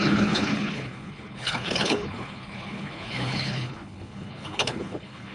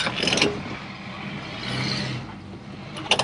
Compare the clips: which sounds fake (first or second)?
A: first